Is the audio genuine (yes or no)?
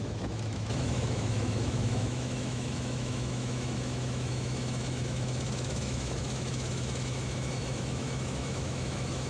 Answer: no